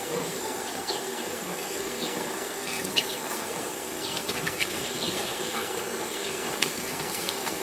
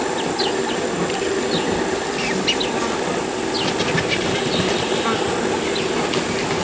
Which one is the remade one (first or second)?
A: first